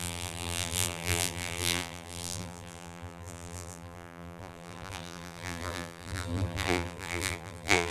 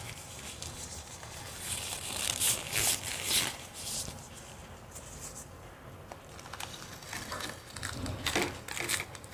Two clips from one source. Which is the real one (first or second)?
second